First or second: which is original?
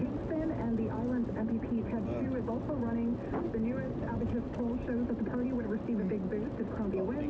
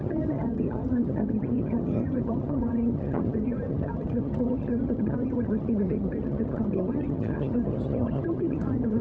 first